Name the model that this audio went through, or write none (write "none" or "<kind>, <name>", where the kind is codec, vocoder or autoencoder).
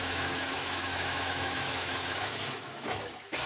autoencoder, DAC-VAE